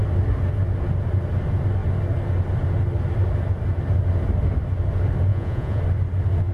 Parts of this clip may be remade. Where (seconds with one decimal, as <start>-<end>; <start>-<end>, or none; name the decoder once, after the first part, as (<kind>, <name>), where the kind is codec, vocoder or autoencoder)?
5.3-5.8 (vocoder, Vocos)

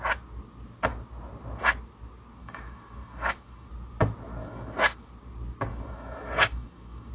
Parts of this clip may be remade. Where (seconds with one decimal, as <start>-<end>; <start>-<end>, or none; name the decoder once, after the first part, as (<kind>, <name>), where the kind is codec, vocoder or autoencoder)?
2.4-3.7 (autoencoder, DAC-VAE); 4.4-5.1; 5.7-7.1

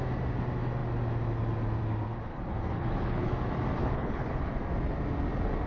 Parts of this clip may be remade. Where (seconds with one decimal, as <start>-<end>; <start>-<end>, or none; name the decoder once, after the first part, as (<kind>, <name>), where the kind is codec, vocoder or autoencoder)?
2.3-3.3 (codec, HILCodec); 3.8-4.5

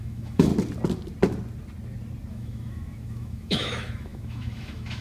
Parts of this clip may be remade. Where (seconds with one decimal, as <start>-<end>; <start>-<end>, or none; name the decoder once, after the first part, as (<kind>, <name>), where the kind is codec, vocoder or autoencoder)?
0.0-0.5 (autoencoder, DAC-VAE); 2.3-5.0

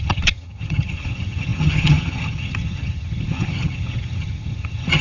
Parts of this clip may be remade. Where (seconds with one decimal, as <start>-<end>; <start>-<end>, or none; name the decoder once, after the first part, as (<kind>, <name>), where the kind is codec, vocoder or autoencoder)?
0.0-5.0 (vocoder, HiFi-GAN)

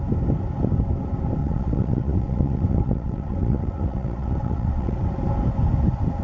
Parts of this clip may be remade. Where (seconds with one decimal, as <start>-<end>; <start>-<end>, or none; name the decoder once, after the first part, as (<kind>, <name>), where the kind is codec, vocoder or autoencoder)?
1.4-5.1 (vocoder, WaveNeXt)